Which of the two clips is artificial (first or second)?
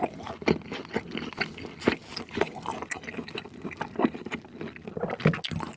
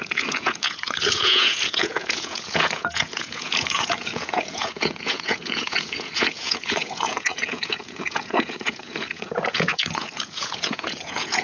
second